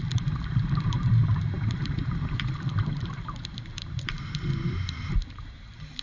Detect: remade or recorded remade